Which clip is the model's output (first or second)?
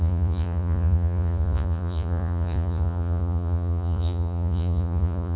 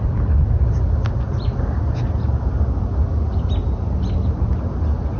first